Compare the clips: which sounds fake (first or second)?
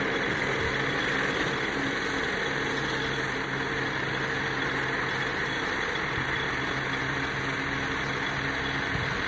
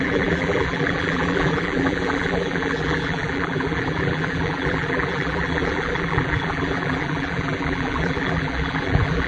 second